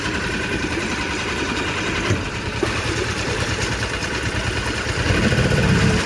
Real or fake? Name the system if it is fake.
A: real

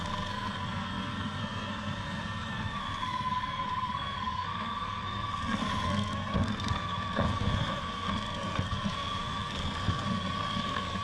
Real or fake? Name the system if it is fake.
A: fake, codec, SNAC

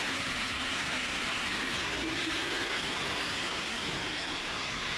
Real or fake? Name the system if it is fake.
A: fake, codec, SNAC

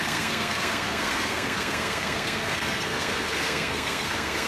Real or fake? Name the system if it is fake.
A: fake, codec, SNAC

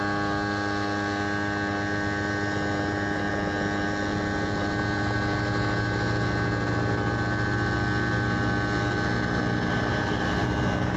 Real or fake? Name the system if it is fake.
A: real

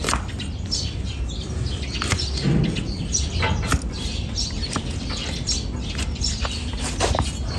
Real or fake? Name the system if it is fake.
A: real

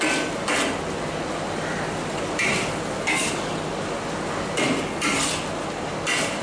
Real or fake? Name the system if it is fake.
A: real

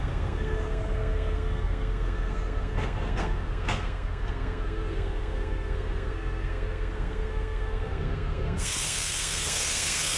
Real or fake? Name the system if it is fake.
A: fake, codec, SNAC